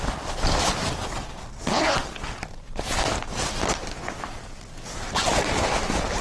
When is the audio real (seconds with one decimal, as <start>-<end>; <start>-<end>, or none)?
0.0-6.2